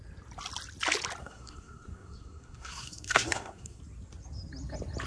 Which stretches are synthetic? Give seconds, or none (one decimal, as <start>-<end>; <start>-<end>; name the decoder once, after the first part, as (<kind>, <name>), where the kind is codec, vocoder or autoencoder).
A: 1.2-3.8 (codec, SNAC)

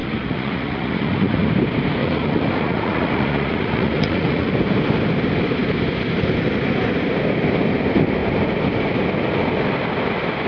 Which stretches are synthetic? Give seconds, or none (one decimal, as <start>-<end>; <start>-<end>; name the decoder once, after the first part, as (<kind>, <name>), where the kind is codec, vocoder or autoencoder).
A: 0.0-1.5 (vocoder, Vocos); 2.0-4.5

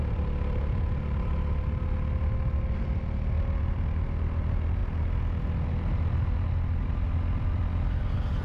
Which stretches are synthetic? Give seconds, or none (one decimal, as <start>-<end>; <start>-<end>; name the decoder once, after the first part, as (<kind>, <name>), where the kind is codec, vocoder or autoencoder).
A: none

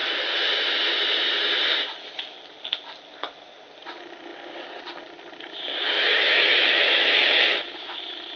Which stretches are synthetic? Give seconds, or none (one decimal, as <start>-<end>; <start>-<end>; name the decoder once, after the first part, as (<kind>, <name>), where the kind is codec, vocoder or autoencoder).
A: 5.7-8.4 (autoencoder, DAC-VAE)

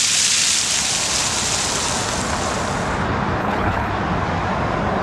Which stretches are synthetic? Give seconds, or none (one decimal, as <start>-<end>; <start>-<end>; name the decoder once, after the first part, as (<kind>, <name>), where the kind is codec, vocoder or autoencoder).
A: 3.4-3.9 (codec, HILCodec)